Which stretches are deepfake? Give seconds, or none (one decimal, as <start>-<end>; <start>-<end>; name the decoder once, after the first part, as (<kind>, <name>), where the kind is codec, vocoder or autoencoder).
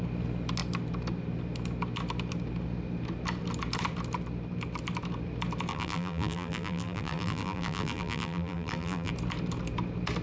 5.7-9.1 (vocoder, BigVGAN v2)